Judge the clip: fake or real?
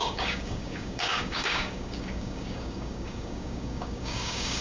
fake